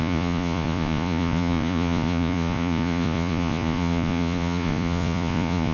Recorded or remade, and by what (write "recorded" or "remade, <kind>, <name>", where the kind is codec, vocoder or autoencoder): remade, vocoder, Vocos